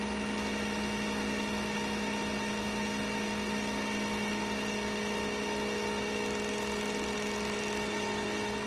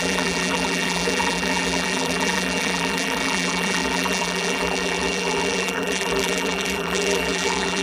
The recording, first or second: first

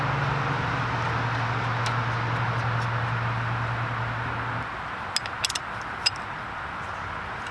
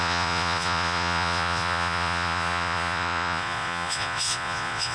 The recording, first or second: first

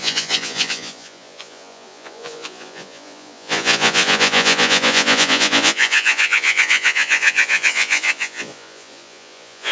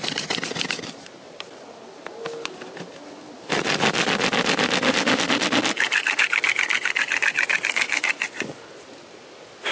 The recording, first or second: second